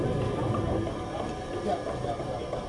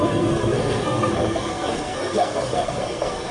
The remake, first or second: second